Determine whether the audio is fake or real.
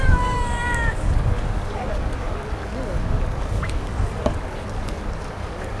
fake